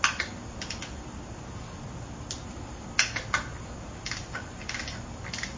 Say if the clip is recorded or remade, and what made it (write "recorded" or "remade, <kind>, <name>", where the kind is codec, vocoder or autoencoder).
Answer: recorded